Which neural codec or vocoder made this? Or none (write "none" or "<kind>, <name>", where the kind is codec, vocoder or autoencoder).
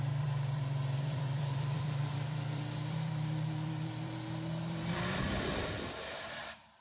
vocoder, BigVGAN v2